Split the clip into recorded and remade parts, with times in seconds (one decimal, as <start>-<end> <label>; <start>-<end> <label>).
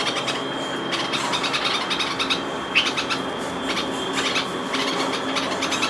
0.0-5.9 recorded